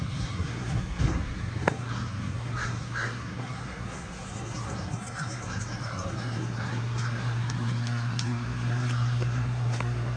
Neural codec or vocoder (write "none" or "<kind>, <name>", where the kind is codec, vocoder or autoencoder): codec, SNAC